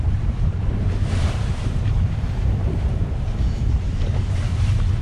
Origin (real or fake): fake